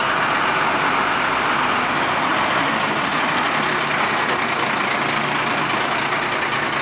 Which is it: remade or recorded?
recorded